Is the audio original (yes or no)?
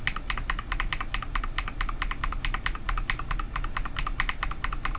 yes